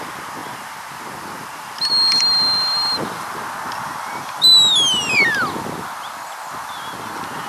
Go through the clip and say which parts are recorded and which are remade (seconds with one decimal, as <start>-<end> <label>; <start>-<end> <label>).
0.0-7.5 recorded